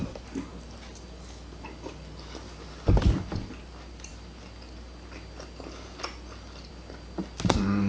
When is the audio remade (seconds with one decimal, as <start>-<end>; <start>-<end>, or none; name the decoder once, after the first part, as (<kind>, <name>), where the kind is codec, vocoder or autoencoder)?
none